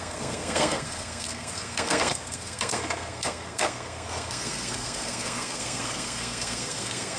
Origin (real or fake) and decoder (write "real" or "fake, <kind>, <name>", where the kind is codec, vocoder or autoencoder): fake, codec, SNAC